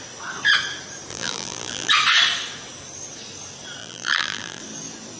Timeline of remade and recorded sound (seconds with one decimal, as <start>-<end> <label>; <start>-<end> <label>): 0.0-1.1 recorded; 1.1-1.9 remade; 1.9-3.8 recorded; 3.8-4.6 remade; 4.6-5.2 recorded